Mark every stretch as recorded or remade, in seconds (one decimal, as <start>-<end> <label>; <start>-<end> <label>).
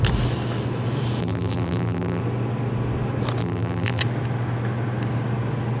0.0-1.2 recorded; 1.2-2.2 remade; 2.2-3.4 recorded; 3.4-4.0 remade; 4.0-5.8 recorded